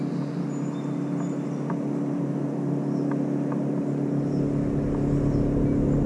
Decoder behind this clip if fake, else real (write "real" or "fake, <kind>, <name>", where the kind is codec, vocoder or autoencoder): real